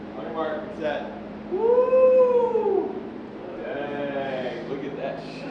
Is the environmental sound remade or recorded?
remade